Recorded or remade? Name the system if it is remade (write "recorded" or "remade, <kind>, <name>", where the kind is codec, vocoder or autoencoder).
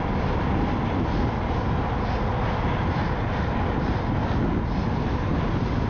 recorded